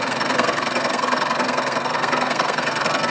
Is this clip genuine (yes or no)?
no